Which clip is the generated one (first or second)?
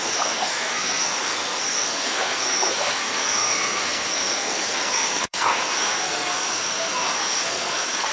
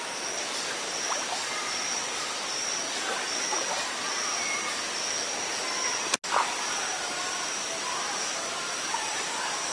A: first